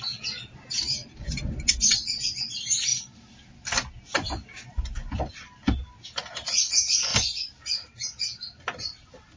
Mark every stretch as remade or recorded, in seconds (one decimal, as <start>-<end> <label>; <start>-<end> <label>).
0.0-9.4 recorded